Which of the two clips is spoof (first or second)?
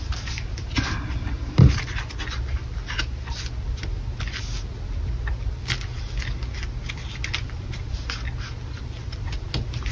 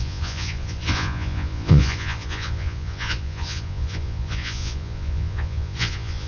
second